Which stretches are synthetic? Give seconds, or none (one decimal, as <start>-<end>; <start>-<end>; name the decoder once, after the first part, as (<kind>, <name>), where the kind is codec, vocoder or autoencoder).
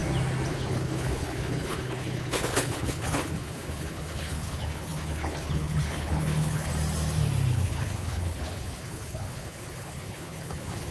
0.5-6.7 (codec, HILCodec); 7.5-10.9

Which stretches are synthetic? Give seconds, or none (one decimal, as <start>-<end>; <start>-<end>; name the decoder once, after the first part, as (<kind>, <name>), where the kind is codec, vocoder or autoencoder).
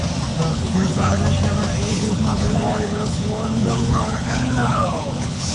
0.5-1.2 (codec, HILCodec); 1.9-5.5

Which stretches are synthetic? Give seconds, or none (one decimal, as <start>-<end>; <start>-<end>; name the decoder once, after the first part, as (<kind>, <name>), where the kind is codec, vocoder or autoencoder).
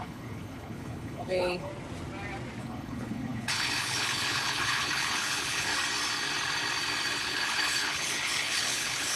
0.0-1.7 (codec, HILCodec); 2.6-5.7; 7.2-9.2